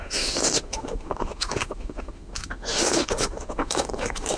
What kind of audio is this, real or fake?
fake